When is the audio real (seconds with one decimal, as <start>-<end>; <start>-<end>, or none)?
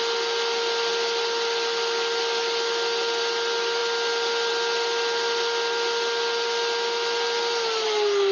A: 0.0-8.3